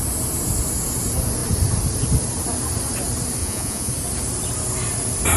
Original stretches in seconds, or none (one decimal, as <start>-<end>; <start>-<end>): 0.0-3.4; 3.9-5.4